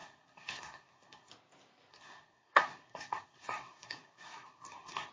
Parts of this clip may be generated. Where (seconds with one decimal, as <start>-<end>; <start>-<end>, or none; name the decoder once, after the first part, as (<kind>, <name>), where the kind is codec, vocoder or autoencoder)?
0.0-1.3 (codec, SNAC); 1.9-5.1